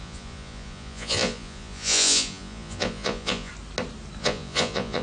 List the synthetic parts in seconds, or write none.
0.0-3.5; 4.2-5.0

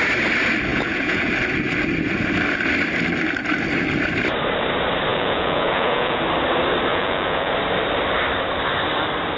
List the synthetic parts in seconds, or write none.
0.7-1.3; 5.1-6.2; 6.9-7.5

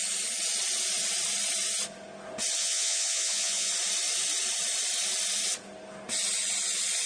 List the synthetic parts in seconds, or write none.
2.6-3.7

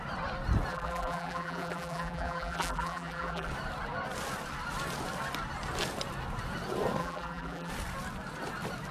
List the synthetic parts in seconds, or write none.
0.7-3.5; 7.0-7.7

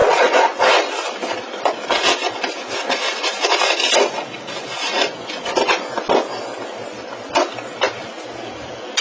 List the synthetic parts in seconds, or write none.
0.0-0.6; 4.7-6.0

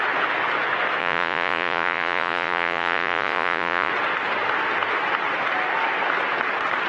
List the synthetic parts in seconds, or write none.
1.0-3.9

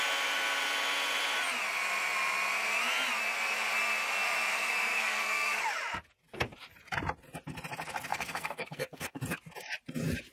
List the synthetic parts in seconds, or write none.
4.5-5.6; 8.1-9.2

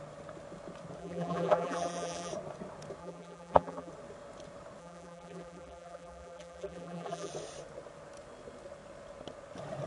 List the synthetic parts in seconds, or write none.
1.0-2.3; 3.0-3.9; 4.8-7.3